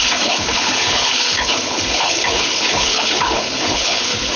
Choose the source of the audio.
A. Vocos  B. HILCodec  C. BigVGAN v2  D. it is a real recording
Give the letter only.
B